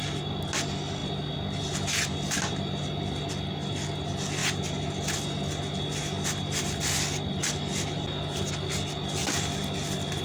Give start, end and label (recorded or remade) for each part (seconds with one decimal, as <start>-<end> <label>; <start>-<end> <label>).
0.0-10.2 recorded